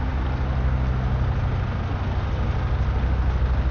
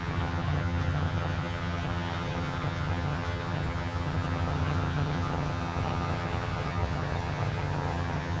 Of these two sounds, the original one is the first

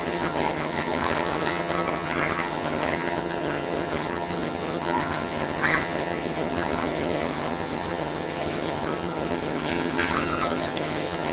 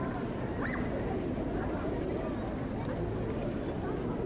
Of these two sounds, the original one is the second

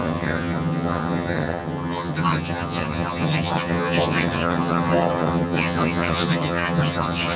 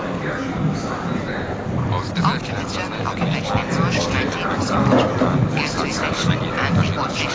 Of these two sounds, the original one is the second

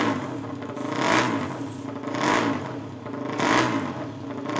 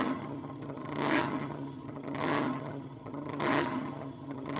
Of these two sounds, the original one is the first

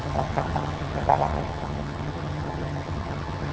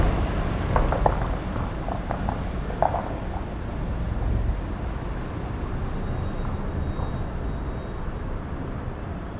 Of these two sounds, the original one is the second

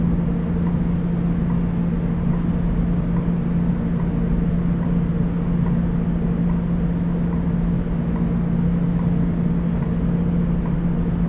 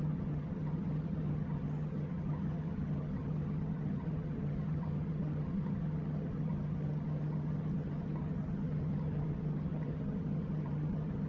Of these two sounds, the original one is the first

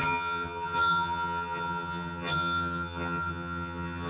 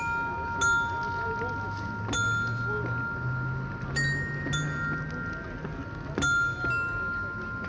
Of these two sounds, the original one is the second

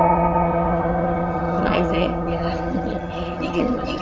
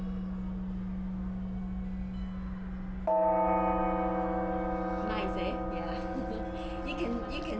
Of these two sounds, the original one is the second